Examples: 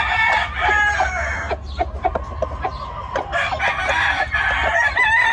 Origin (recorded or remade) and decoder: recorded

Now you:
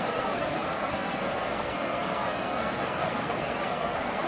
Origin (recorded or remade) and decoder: remade, codec, SNAC